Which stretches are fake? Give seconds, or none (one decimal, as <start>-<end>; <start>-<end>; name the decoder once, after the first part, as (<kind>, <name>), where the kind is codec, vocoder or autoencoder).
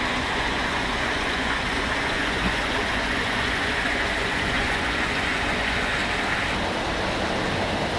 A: 0.0-6.0 (vocoder, Vocos)